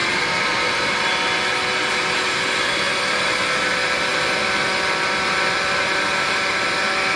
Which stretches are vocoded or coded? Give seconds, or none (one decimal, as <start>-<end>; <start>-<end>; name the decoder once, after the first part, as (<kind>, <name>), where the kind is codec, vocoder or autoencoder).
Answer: none